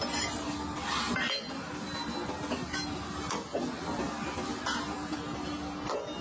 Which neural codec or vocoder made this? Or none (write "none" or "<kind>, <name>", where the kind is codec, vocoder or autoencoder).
none